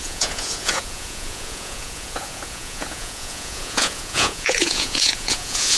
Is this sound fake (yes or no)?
yes